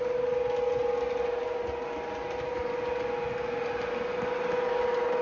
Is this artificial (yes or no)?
no